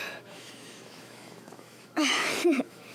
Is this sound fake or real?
fake